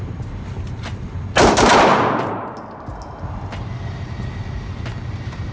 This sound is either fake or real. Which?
real